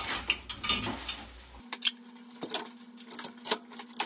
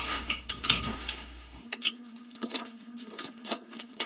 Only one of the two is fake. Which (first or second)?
second